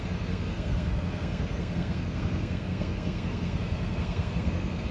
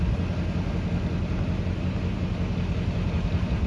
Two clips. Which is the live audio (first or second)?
second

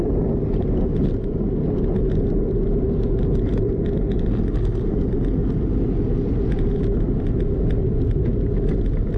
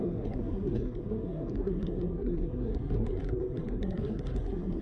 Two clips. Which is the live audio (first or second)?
first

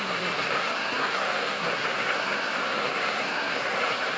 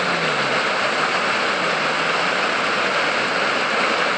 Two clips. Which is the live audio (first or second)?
second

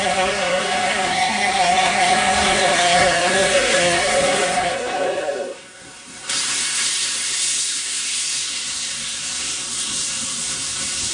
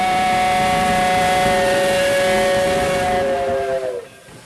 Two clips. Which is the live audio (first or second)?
second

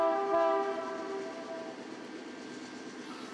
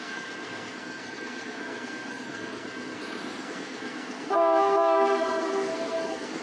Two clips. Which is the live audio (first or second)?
first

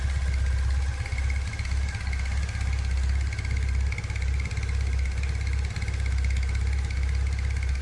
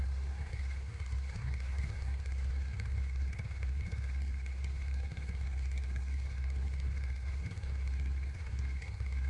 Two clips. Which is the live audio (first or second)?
first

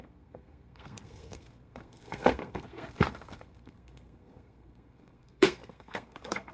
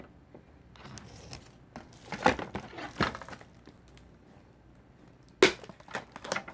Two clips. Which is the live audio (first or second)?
second